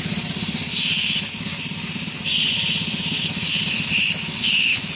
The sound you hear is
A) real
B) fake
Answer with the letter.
A